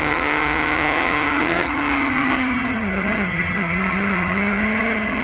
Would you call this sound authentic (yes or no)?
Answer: no